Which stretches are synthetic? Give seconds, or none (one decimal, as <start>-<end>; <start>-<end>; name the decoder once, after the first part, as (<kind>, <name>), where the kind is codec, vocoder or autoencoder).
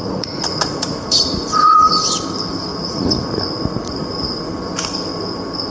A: 0.0-1.9 (vocoder, Vocos); 2.7-3.4; 3.8-4.5